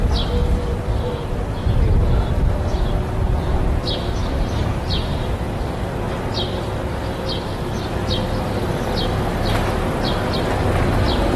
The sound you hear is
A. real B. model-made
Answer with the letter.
A